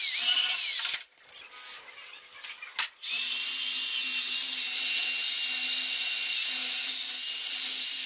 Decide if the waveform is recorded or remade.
recorded